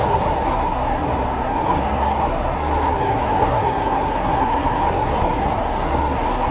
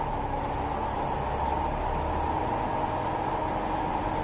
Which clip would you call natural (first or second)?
second